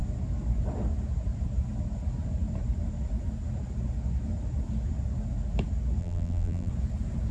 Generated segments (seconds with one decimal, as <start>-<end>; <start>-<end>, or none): 6.0-6.7